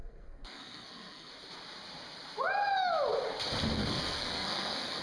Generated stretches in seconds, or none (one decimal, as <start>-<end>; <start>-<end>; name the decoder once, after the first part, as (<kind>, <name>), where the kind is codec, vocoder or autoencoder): 0.0-1.3 (codec, SNAC); 3.8-5.0